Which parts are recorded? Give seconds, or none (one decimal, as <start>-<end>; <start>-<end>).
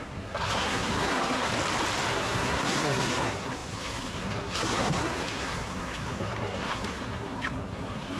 1.5-2.1